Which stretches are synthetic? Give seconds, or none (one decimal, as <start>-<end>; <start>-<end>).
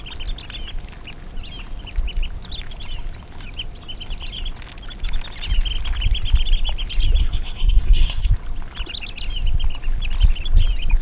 7.2-8.3